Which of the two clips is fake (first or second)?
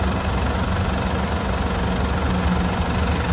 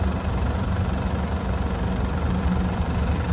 second